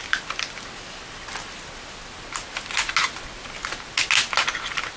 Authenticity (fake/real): real